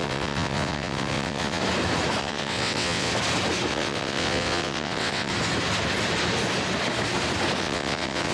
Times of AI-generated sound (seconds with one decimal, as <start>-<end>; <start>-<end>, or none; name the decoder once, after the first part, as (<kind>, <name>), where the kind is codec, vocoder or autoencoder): 0.0-1.6 (vocoder, WaveNeXt); 2.2-3.1; 3.7-5.3; 7.6-8.3